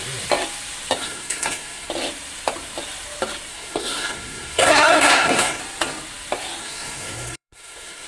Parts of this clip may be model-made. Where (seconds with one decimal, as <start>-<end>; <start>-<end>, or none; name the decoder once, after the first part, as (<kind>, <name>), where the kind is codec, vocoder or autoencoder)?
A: 1.0-1.9 (codec, SNAC); 3.5-5.6; 6.6-8.1